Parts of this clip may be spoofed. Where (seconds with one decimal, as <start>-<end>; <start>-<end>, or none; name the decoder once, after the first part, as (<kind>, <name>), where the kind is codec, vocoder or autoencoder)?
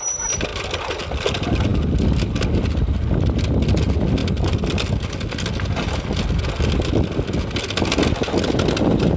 none